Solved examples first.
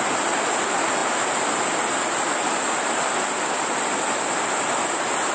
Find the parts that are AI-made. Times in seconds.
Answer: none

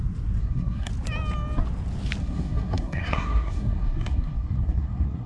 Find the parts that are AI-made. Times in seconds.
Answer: 0.4-0.9 (codec, SNAC); 2.2-5.3

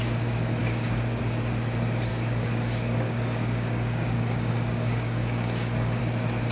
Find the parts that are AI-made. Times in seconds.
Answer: 0.6-1.2 (codec, DAC); 2.1-6.0

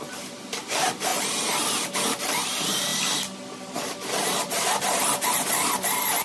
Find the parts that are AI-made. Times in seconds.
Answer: 0.0-2.9 (vocoder, BigVGAN v2); 4.2-6.2

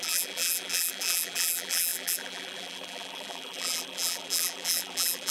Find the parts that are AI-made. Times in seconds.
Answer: 0.0-5.3 (vocoder, BigVGAN v2)